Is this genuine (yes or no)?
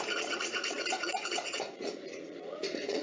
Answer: no